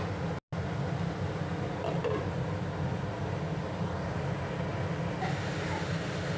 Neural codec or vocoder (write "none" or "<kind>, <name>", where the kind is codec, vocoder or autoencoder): none